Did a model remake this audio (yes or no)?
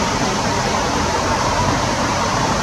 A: yes